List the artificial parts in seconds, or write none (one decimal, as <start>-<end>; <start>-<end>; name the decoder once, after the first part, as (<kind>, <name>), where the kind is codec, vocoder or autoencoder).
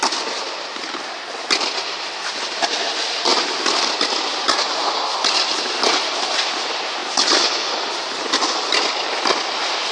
none